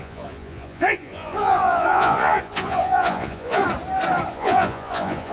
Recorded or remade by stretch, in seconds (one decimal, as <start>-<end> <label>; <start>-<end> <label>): 0.0-3.6 remade; 3.6-4.3 recorded; 4.3-5.3 remade